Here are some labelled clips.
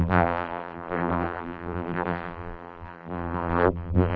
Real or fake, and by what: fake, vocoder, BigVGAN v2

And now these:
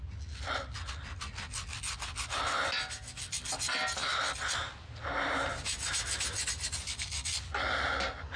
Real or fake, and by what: real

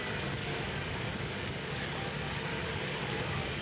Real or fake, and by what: fake, codec, DAC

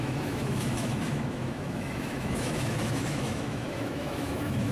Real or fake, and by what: fake, autoencoder, DAC-VAE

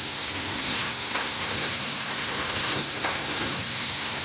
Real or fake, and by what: fake, codec, SNAC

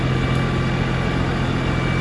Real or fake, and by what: real